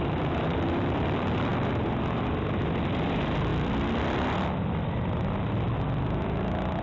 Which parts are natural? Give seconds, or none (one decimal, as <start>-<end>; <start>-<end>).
1.5-2.6

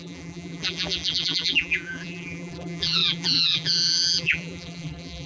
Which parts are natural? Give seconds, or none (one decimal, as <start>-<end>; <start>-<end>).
none

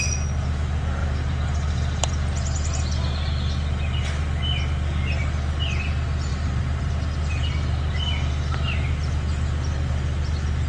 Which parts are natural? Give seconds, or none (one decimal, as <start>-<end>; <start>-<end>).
0.0-1.0; 2.1-6.3; 6.8-10.7

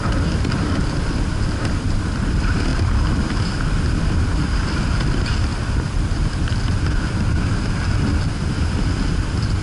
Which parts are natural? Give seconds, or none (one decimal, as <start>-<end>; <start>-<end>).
1.1-5.5; 7.8-9.6

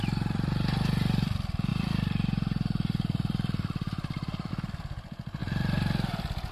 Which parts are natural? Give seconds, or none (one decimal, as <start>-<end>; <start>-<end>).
none